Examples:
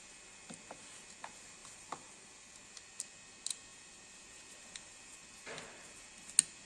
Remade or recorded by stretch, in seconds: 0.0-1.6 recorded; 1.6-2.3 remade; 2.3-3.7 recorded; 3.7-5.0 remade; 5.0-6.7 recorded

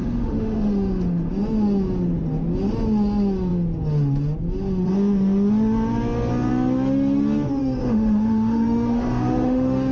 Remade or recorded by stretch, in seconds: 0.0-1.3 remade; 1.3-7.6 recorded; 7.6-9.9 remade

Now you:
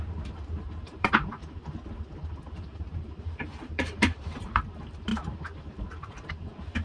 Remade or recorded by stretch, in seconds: 0.0-1.4 remade; 1.4-2.6 recorded; 2.6-6.8 remade

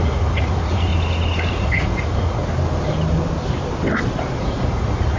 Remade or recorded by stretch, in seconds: 0.0-0.9 remade; 0.9-1.5 recorded; 1.5-2.4 remade; 2.4-4.4 recorded; 4.4-5.2 remade

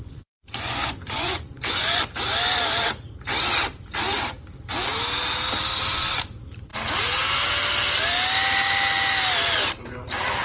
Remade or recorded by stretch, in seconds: 0.0-2.1 remade; 2.1-10.4 recorded